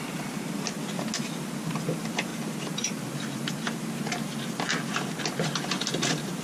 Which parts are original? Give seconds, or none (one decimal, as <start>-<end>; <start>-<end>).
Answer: 0.0-2.3; 4.0-6.4

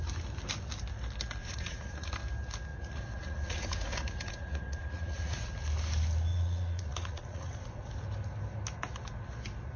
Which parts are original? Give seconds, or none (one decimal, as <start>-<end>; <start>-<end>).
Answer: 0.0-1.4; 2.1-2.7; 5.5-6.3; 7.9-9.8

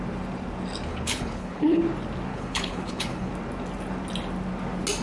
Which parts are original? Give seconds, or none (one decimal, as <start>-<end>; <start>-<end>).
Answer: 0.0-0.9; 1.8-2.3; 3.3-5.0

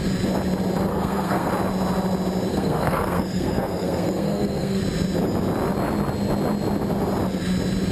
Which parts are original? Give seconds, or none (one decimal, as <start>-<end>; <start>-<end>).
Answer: 0.0-0.9; 1.5-2.5; 4.8-7.9

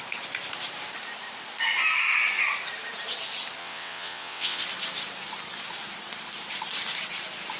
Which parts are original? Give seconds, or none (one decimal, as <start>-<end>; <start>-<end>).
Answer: 0.0-3.6; 4.6-7.6

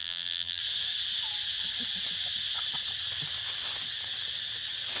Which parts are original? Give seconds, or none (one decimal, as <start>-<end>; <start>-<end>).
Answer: 0.6-5.0

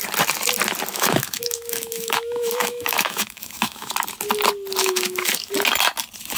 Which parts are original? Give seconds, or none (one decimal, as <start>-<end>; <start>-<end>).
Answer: 0.0-0.9; 3.9-4.8; 5.5-6.4

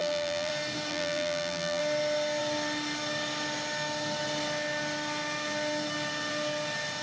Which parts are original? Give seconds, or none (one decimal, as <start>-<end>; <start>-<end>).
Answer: 0.5-0.9; 1.8-7.0